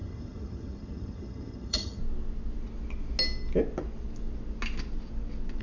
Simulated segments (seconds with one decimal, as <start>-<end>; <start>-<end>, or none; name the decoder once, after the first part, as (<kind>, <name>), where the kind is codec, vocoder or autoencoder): 0.0-2.0 (vocoder, HiFi-GAN)